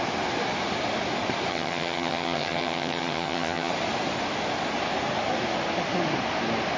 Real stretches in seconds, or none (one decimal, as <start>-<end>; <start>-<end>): 0.0-1.5; 3.7-6.8